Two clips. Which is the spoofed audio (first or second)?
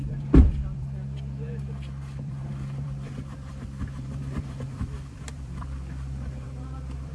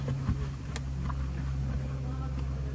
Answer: first